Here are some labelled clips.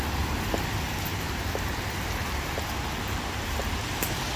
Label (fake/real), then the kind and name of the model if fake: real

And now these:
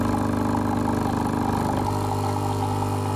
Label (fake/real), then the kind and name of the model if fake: real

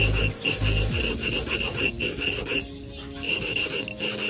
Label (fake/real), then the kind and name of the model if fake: real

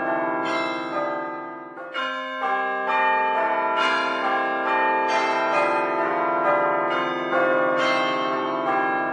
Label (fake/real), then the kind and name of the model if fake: real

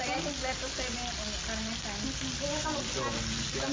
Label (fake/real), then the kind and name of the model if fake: real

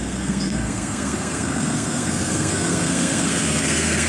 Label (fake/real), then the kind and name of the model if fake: fake, codec, SNAC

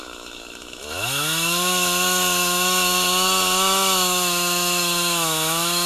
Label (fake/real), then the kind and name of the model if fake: fake, autoencoder, DAC-VAE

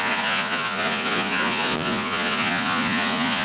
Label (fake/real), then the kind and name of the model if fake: fake, vocoder, Vocos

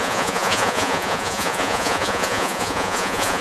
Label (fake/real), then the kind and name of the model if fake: fake, vocoder, Vocos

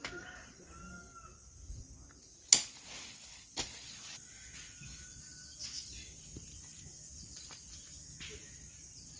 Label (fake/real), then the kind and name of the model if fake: real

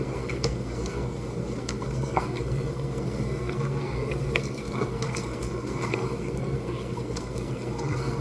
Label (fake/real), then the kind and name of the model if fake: fake, codec, SNAC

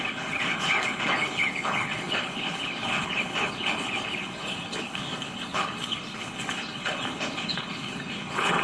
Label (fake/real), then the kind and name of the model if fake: fake, codec, HILCodec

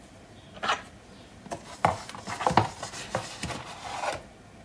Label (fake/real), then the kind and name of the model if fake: real